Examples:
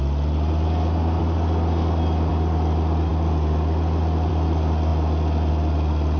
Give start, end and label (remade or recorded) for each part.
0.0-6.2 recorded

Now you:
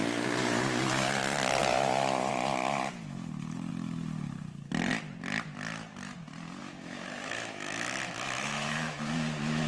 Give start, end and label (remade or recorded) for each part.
0.0-6.6 recorded; 6.6-9.1 remade; 9.1-9.7 recorded

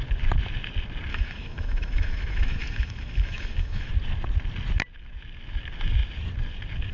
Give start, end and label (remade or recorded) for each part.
0.0-1.1 recorded; 1.1-3.9 remade; 3.9-6.9 recorded

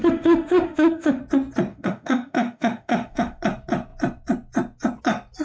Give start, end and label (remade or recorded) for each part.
0.0-1.2 remade; 1.2-1.7 recorded; 1.7-3.4 remade; 3.4-5.4 recorded

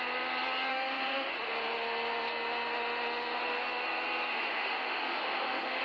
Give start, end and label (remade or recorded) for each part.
0.0-0.7 recorded; 0.7-1.3 remade; 1.3-4.3 recorded; 4.3-5.8 remade